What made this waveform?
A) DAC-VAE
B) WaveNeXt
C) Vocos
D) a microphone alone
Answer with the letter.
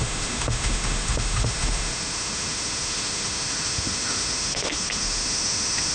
A